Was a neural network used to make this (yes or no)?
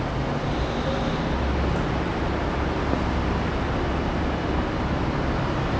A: no